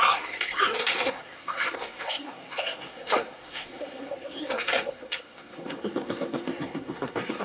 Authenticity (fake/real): fake